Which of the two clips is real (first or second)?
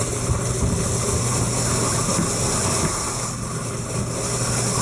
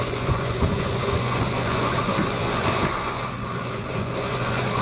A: first